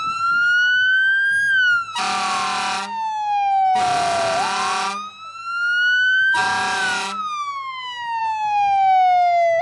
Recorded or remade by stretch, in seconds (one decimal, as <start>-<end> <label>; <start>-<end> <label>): 0.0-9.6 recorded